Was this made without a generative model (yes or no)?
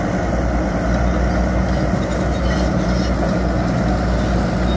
yes